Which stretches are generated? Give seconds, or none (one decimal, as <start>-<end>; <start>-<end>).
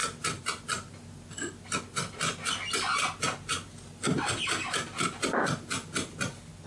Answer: none